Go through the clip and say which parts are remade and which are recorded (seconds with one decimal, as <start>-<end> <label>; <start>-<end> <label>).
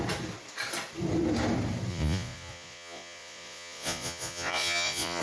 0.0-1.9 recorded; 1.9-5.2 remade